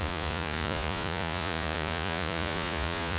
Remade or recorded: remade